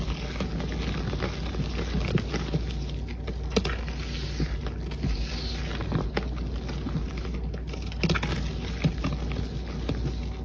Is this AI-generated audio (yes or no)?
no